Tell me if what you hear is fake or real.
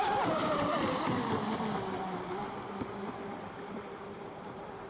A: real